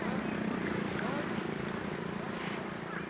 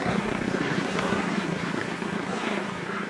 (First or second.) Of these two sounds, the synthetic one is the second